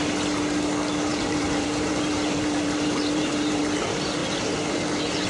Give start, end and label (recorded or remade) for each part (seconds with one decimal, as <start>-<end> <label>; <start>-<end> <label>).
0.0-1.1 recorded; 1.1-3.6 remade; 3.6-5.3 recorded